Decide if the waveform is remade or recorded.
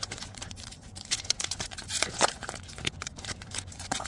remade